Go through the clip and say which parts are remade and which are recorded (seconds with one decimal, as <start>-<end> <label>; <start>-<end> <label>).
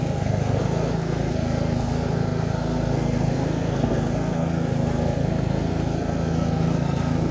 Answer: 0.0-7.3 remade